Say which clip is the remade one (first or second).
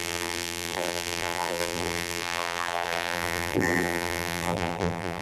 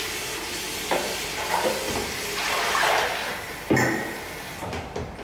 first